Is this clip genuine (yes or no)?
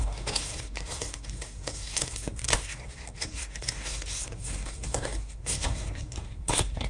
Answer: no